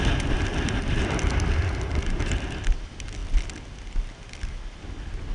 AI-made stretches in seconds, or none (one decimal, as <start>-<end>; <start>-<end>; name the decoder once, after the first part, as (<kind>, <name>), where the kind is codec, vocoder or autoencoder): none